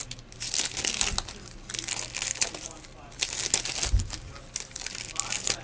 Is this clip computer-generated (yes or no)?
no